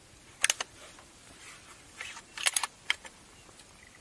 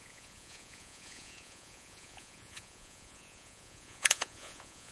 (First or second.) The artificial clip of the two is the second